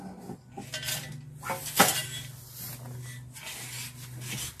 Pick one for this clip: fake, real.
real